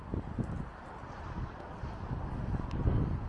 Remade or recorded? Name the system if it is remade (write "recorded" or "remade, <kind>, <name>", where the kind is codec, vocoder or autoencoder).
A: recorded